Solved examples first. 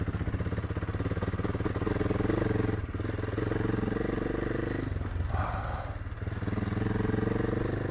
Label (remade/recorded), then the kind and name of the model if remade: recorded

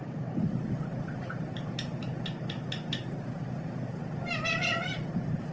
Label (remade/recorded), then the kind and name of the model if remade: recorded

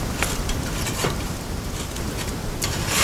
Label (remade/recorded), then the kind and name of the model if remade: remade, vocoder, BigVGAN v2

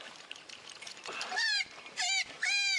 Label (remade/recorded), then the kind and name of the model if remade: remade, vocoder, BigVGAN v2